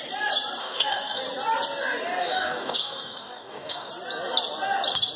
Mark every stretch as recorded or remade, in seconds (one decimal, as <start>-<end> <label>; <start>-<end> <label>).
0.0-0.6 recorded; 0.6-1.2 remade; 1.2-2.2 recorded; 2.2-3.9 remade; 3.9-5.2 recorded